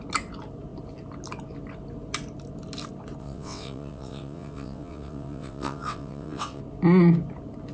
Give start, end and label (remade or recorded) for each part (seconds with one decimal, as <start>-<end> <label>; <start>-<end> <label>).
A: 0.0-3.2 recorded; 3.2-6.6 remade; 6.6-7.7 recorded